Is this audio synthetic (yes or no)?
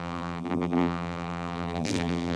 yes